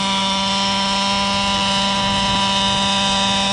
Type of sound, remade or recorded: recorded